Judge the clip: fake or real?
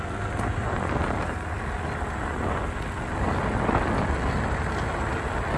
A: real